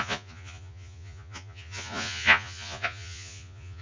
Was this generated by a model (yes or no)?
yes